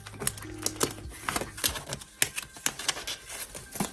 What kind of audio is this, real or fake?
real